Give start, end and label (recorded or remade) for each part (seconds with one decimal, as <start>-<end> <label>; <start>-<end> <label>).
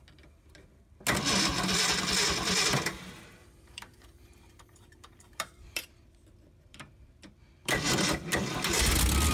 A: 0.0-3.4 recorded; 3.4-7.8 remade; 7.8-9.3 recorded